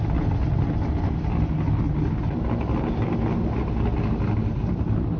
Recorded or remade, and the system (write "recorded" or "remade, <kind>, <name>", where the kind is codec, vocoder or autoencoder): recorded